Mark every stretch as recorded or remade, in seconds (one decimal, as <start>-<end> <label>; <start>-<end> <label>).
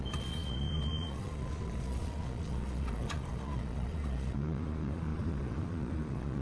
0.0-6.4 remade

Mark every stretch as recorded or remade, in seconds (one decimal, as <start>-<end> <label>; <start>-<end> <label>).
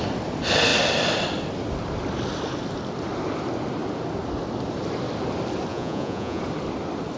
0.0-5.7 recorded; 5.7-6.4 remade; 6.4-7.2 recorded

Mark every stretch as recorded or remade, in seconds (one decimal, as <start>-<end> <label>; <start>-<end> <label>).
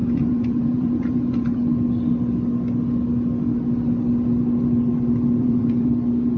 0.0-1.6 remade; 1.6-5.4 recorded; 5.4-5.9 remade; 5.9-6.4 recorded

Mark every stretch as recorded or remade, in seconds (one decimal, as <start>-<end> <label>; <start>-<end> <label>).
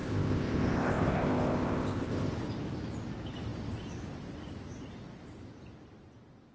0.0-2.3 remade; 2.3-6.5 recorded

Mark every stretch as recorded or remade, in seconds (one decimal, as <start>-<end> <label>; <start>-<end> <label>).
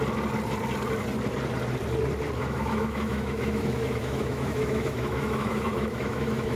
0.0-2.4 recorded; 2.4-6.6 remade